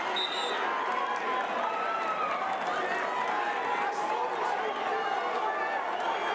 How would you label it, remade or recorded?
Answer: recorded